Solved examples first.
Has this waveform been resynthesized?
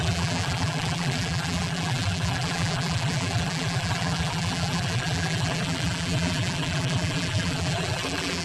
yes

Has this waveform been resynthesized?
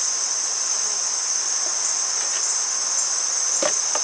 no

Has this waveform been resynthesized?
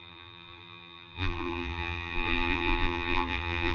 yes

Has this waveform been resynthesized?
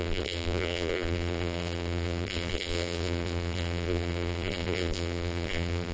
yes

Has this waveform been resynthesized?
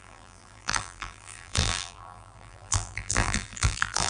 yes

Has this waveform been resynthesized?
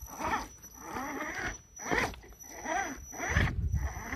no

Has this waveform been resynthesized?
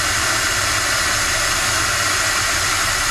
no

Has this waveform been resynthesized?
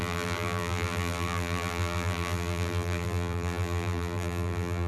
yes